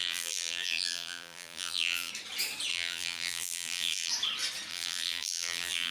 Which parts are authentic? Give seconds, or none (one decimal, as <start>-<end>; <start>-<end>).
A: 2.1-2.7; 4.1-4.7